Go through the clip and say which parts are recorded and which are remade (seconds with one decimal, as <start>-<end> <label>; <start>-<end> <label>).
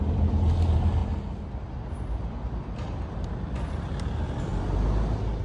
0.0-1.0 recorded; 1.0-1.9 remade; 1.9-5.4 recorded